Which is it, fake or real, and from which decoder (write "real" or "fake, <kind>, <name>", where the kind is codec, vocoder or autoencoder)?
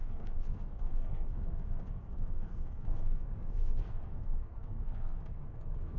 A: fake, codec, SNAC